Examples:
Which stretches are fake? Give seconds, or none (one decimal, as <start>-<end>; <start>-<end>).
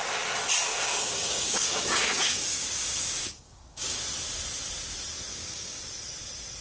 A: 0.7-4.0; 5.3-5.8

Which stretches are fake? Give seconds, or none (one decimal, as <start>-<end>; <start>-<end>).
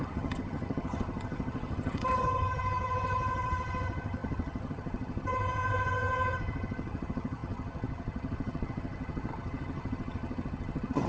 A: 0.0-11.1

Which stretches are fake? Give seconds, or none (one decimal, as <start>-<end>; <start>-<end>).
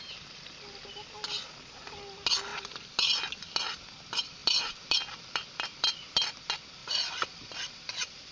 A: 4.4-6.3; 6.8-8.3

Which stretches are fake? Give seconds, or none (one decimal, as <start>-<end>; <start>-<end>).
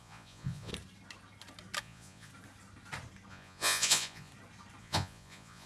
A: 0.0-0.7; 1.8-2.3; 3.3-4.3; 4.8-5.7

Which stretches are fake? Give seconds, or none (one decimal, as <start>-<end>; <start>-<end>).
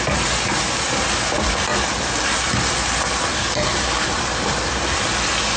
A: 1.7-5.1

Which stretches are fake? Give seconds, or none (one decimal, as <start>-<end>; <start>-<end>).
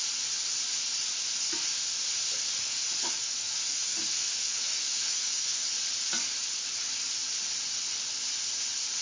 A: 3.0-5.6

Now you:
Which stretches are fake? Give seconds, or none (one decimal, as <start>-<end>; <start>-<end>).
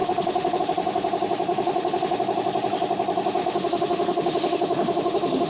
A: 0.0-0.6; 1.5-2.2; 3.4-5.5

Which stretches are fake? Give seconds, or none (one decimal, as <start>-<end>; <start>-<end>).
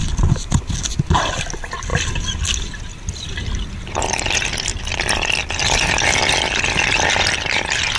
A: 0.0-0.6; 4.7-5.4